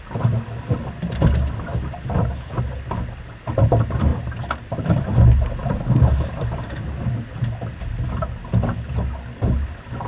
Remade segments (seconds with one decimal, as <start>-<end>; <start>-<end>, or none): 4.1-5.0; 5.6-6.3